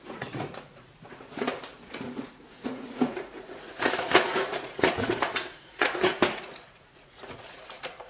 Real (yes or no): no